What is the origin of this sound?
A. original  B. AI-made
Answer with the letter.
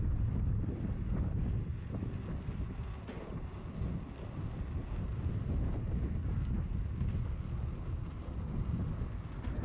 A